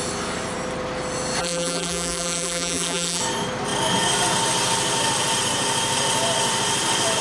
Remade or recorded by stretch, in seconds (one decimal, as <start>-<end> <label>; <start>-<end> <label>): 0.0-1.4 recorded; 1.4-3.2 remade; 3.2-7.2 recorded